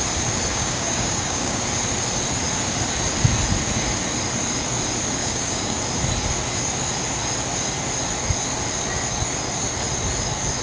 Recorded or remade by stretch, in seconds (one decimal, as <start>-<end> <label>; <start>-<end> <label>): 0.0-0.5 recorded; 0.5-1.6 remade; 1.6-5.2 recorded; 5.2-5.8 remade; 5.8-10.6 recorded